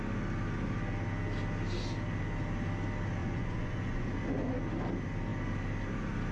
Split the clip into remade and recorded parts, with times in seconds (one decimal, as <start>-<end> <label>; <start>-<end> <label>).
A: 0.0-3.2 recorded; 3.2-4.1 remade; 4.1-6.3 recorded